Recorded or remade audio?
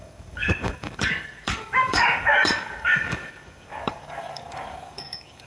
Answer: remade